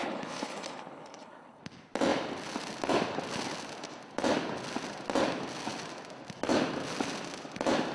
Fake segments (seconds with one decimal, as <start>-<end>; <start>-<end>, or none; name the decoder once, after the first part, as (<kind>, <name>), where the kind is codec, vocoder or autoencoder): 0.0-1.6 (codec, HILCodec)